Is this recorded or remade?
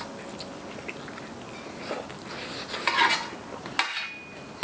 recorded